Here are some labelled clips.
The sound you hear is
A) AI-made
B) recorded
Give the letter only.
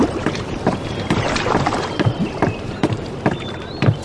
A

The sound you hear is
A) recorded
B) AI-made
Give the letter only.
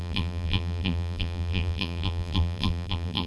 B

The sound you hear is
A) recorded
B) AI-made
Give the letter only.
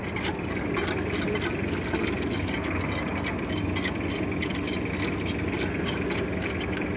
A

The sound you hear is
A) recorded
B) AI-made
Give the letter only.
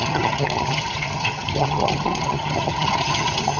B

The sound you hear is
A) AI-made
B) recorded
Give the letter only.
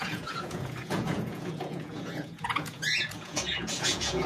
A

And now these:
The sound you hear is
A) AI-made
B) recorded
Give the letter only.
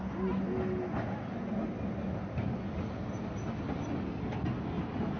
B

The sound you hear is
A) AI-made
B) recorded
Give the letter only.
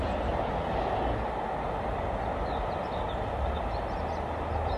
B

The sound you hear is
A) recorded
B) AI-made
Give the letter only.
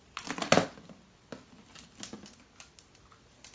A